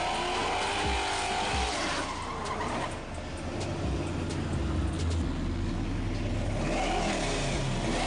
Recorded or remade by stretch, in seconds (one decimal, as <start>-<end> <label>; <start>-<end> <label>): 0.0-8.1 recorded